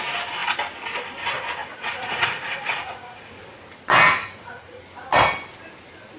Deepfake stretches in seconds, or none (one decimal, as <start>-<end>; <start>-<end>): 1.6-3.4; 4.1-4.8